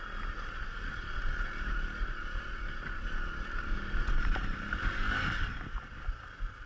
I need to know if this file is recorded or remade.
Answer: recorded